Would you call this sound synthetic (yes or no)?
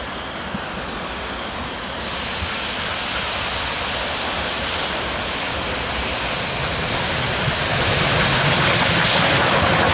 no